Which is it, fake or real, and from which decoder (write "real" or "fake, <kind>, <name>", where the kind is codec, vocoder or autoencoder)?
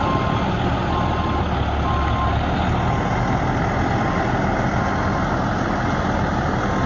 real